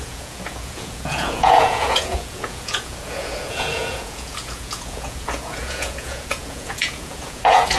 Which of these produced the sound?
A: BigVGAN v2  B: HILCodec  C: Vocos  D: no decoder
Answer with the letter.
C